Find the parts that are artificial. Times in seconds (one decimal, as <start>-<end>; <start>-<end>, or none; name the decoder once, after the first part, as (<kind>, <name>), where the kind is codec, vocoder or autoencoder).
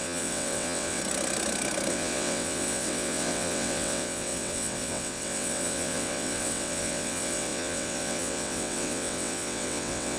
0.0-1.0 (vocoder, WaveNeXt); 1.9-10.2